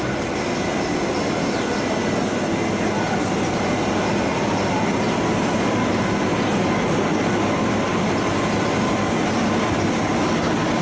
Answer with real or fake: real